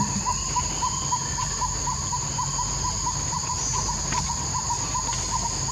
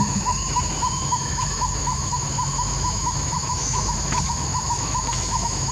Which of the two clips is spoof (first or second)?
second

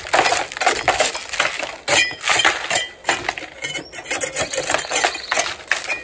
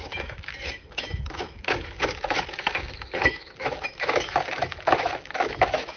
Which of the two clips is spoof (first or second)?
second